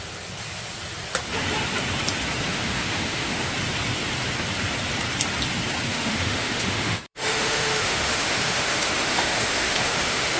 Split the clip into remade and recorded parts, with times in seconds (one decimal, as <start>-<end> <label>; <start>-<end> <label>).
0.0-2.5 recorded; 2.5-3.5 remade; 3.5-5.9 recorded; 5.9-10.4 remade